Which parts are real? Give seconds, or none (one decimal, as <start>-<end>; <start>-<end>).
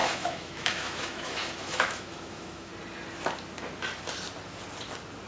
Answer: 2.7-5.3